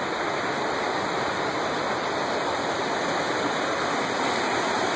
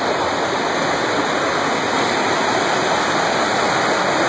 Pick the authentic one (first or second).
second